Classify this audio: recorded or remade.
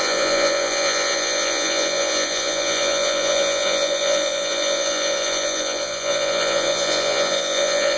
remade